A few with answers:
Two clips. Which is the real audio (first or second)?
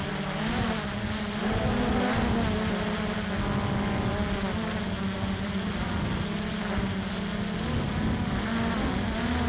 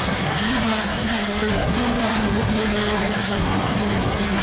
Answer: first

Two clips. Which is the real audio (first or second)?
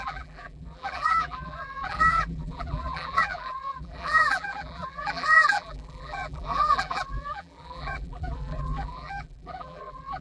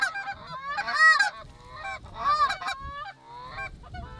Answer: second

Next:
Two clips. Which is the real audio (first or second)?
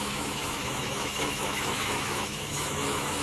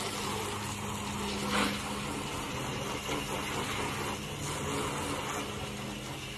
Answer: second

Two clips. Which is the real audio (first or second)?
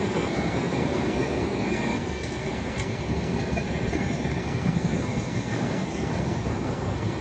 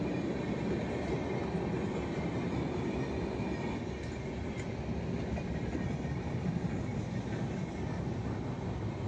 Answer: second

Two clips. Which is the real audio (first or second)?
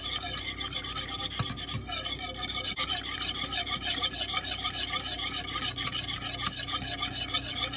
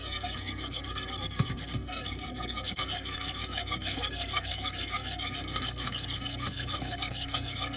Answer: first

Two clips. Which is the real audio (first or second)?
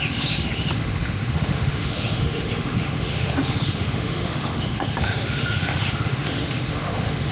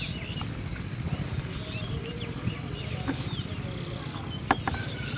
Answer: second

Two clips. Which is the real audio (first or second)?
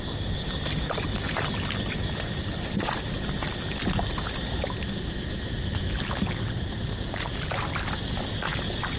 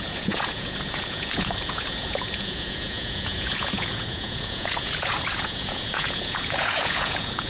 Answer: first